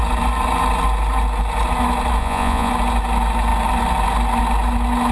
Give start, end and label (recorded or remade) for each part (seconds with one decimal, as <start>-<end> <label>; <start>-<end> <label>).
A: 0.0-2.2 recorded; 2.2-2.7 remade; 2.7-5.1 recorded